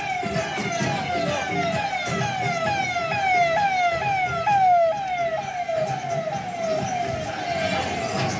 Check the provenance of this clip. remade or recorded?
recorded